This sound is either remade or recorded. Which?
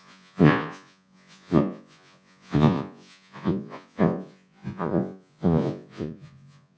remade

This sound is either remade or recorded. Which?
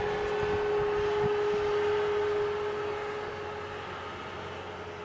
recorded